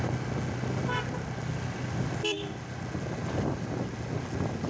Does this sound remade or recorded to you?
recorded